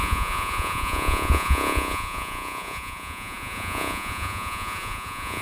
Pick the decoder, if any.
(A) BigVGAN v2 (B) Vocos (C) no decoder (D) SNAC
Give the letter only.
B